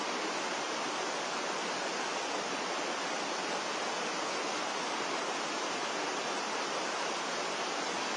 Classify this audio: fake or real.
real